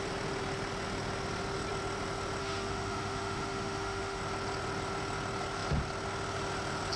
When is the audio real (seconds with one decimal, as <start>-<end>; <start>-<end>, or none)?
0.0-2.4; 4.2-7.0